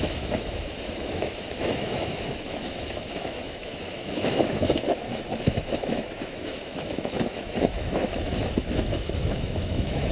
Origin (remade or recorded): remade